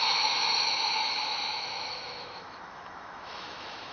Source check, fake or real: fake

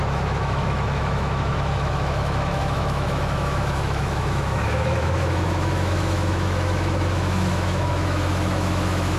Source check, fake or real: fake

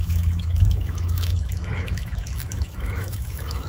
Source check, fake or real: fake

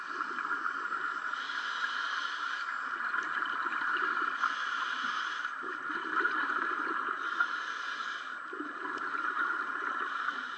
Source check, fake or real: real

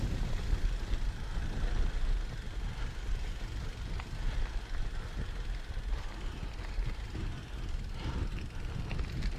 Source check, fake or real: real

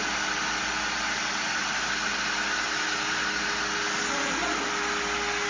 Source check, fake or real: real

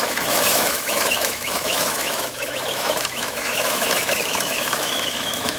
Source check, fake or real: fake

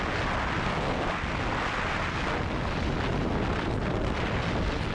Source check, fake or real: real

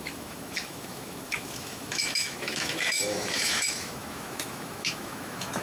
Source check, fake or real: fake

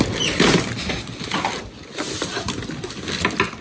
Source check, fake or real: real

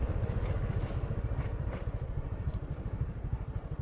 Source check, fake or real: real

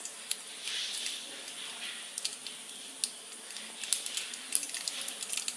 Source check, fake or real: real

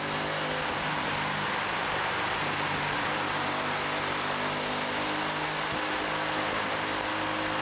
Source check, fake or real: real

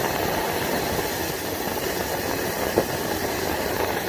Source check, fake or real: real